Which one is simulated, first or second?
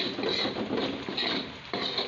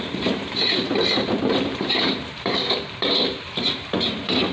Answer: second